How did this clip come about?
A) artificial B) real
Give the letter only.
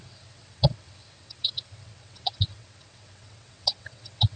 A